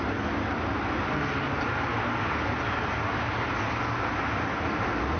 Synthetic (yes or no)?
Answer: no